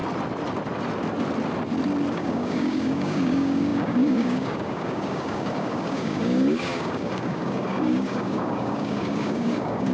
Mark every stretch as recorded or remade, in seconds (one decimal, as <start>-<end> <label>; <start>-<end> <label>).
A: 0.0-2.1 recorded; 2.1-9.9 remade